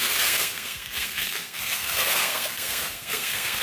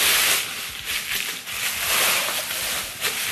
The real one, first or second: second